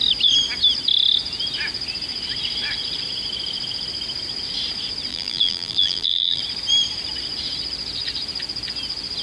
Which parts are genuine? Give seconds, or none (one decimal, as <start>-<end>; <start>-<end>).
0.0-5.1; 6.4-9.2